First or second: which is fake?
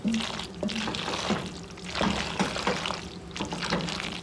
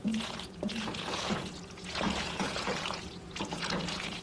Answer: second